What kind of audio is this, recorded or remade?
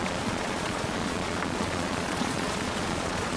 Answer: remade